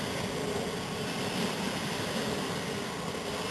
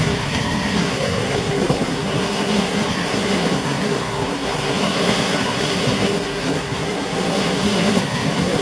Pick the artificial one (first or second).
second